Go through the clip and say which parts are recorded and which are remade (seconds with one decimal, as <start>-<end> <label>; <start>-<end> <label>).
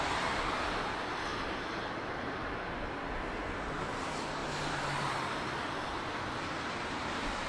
0.0-7.5 recorded